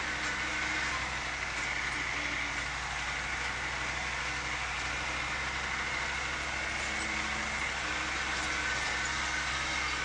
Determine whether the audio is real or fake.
real